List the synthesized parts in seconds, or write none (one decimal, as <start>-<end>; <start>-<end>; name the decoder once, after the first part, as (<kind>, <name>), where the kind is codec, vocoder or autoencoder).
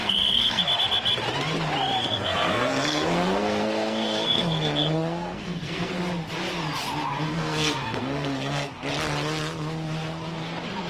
0.0-0.6 (codec, SNAC); 2.0-6.0; 7.2-8.7